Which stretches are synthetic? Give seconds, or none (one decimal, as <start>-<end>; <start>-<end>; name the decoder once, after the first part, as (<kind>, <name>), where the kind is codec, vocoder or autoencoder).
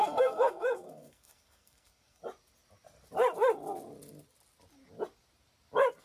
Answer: 0.0-2.2 (codec, SNAC)